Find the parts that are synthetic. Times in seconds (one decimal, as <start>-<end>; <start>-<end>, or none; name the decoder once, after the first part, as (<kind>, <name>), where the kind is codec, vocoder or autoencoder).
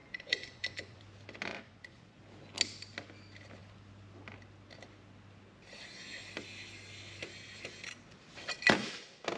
0.0-1.0 (vocoder, Vocos); 1.5-2.2